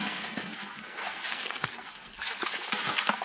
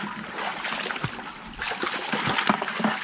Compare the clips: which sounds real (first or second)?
second